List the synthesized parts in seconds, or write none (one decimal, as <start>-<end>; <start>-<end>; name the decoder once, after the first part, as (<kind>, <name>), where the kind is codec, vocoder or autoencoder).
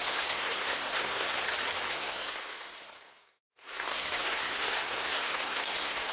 0.0-1.4 (codec, SNAC); 1.9-6.1